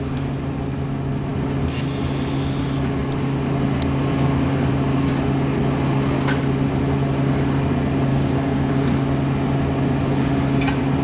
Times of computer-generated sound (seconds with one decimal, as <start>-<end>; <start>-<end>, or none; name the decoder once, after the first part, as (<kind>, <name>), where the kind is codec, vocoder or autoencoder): 8.1-8.7 (codec, DAC)